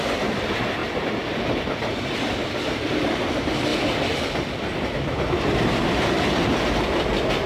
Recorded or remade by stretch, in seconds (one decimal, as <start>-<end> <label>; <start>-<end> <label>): 0.0-0.8 remade; 0.8-2.9 recorded; 2.9-3.7 remade; 3.7-5.3 recorded; 5.3-7.5 remade